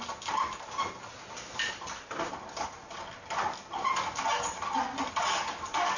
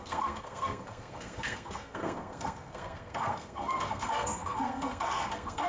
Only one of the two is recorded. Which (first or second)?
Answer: first